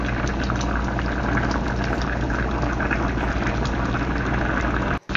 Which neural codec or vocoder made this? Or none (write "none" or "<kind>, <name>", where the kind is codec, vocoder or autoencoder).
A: none